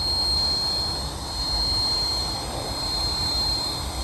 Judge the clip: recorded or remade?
recorded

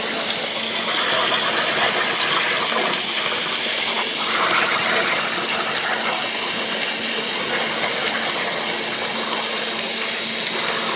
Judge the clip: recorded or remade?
recorded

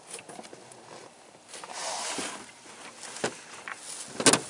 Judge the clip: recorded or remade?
recorded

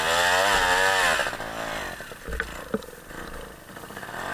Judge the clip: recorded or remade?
recorded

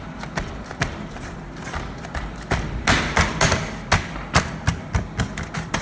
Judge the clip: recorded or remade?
recorded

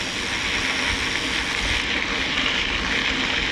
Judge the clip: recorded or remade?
recorded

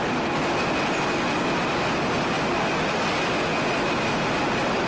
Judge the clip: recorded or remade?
recorded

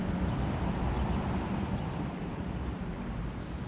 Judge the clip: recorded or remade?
recorded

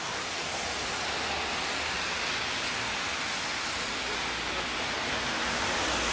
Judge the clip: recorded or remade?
recorded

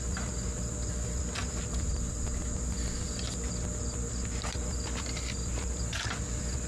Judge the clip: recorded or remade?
recorded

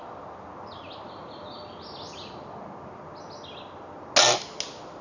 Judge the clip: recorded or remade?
recorded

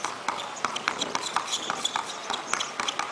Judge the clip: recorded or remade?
recorded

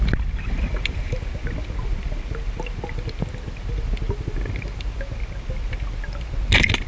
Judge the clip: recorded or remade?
recorded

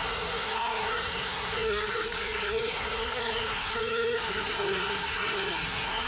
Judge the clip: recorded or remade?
remade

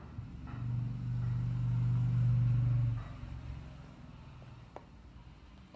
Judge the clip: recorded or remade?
recorded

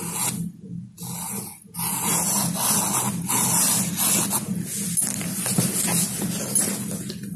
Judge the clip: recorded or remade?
recorded